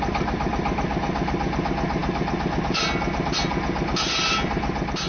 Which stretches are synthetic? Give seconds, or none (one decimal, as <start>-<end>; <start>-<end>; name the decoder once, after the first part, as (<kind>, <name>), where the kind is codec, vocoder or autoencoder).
none